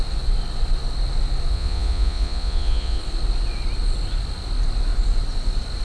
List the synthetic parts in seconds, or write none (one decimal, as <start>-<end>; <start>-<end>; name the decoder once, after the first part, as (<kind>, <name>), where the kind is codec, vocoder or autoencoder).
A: 1.5-3.0 (vocoder, Vocos)